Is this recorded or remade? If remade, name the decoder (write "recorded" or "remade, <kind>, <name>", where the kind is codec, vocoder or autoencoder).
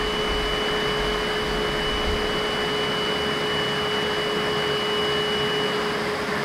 recorded